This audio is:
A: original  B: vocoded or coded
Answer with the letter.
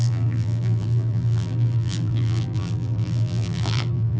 B